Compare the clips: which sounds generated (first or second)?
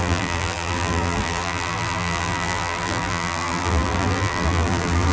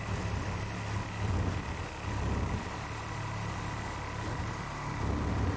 first